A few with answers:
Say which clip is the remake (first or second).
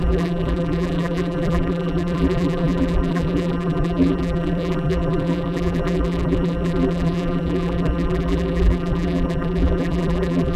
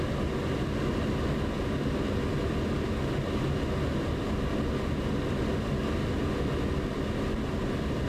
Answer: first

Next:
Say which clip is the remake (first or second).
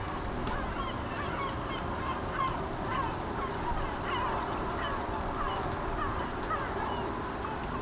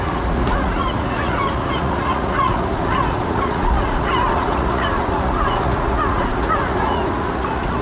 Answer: second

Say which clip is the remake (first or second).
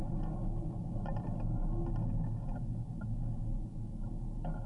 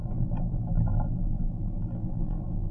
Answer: second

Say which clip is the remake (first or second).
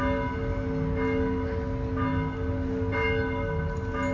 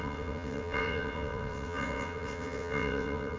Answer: second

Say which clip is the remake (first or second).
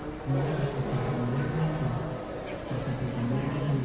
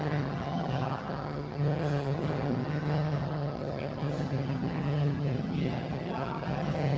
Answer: second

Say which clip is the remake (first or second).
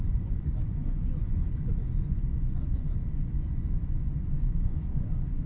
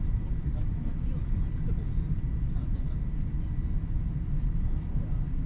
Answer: first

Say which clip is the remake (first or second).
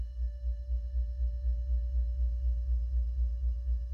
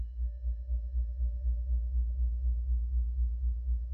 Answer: second